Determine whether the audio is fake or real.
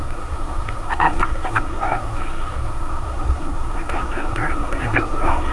fake